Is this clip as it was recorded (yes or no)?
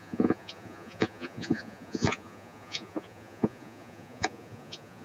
no